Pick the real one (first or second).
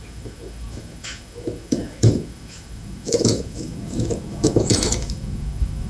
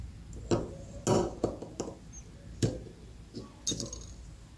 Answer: second